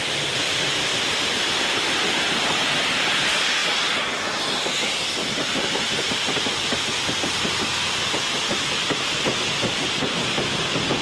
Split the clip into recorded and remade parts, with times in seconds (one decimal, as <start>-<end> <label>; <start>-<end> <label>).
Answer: 0.0-11.0 recorded